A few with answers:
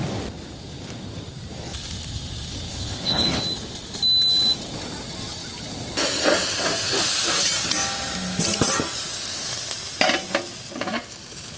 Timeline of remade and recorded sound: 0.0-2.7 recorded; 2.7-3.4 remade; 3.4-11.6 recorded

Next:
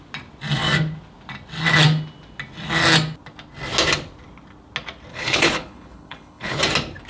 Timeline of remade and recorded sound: 0.0-5.1 recorded; 5.1-6.6 remade; 6.6-7.1 recorded

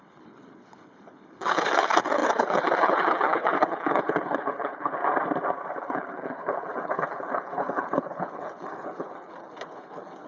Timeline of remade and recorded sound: 0.0-5.0 remade; 5.0-5.8 recorded; 5.8-10.3 remade

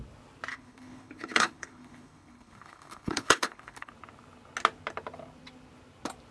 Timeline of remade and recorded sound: 0.0-0.5 recorded; 0.5-3.9 remade; 3.9-6.3 recorded

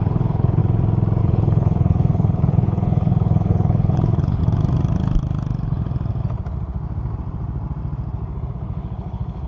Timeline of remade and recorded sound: 0.0-0.6 remade; 0.6-1.2 recorded; 1.2-4.4 remade; 4.4-8.5 recorded; 8.5-9.5 remade